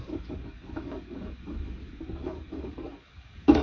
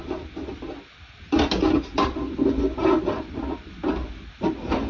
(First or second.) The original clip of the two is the second